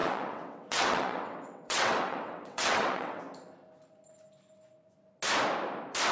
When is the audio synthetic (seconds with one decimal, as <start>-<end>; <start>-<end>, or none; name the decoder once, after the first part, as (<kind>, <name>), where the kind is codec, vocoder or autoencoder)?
0.0-3.2 (vocoder, WaveNeXt)